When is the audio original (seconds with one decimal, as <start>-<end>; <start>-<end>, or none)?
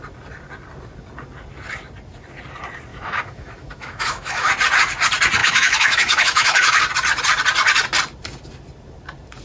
0.0-2.9; 4.5-5.4; 6.8-9.4